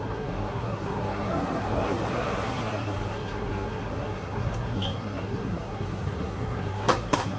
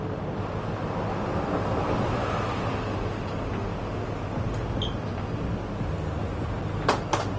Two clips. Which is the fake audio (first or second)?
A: first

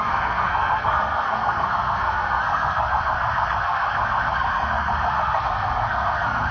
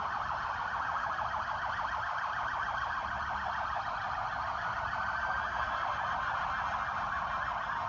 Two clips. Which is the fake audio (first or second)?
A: first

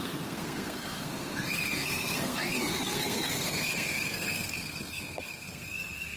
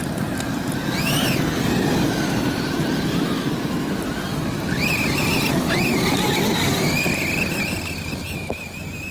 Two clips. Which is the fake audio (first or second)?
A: first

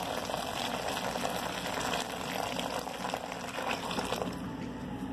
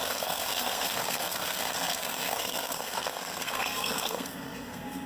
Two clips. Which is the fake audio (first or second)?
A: second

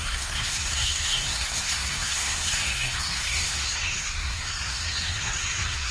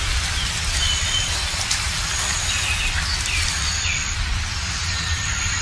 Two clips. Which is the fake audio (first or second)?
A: first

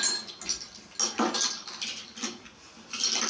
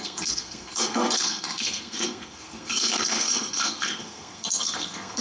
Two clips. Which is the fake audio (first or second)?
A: second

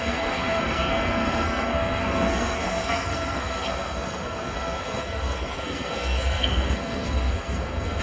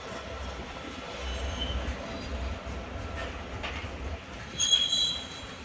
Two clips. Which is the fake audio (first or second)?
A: first